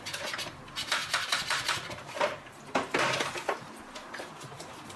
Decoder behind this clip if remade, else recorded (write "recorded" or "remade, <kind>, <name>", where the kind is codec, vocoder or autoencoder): recorded